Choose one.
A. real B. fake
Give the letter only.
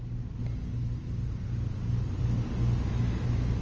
A